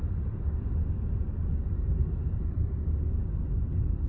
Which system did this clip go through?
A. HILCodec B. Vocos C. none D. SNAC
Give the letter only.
C